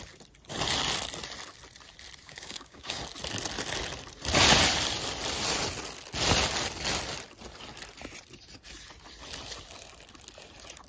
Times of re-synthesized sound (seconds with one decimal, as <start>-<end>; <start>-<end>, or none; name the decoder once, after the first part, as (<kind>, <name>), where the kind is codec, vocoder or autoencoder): 2.2-3.0 (codec, DAC)